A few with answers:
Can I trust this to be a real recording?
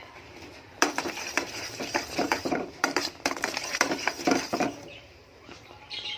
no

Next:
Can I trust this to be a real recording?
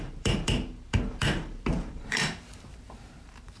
no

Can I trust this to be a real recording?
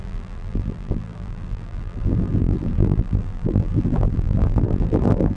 no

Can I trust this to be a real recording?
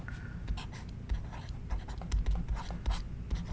yes